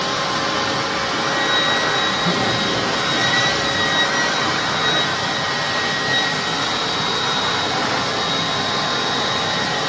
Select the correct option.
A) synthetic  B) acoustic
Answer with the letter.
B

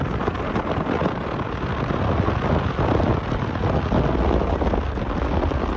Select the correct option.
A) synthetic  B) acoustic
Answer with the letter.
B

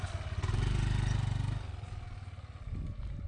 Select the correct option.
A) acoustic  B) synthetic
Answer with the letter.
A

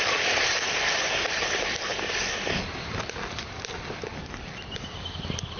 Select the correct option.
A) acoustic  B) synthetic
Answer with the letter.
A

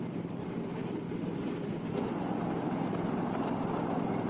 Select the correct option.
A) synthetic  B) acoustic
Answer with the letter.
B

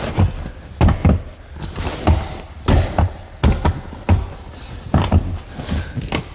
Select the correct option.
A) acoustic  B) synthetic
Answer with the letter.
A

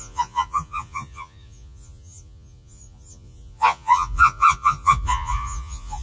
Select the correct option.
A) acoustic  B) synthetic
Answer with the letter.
B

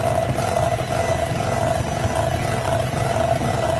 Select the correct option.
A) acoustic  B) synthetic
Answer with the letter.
A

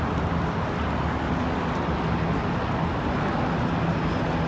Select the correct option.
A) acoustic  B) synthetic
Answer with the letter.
A